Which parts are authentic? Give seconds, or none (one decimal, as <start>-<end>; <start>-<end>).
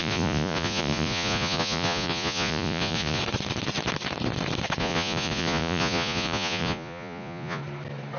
3.2-4.8; 7.6-8.2